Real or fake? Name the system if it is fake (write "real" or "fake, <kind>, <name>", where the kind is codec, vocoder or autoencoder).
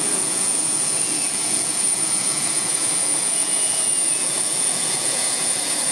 fake, vocoder, Vocos